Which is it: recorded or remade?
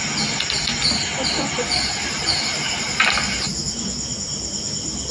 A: recorded